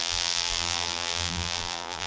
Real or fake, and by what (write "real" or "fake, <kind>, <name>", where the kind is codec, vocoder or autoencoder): fake, vocoder, BigVGAN v2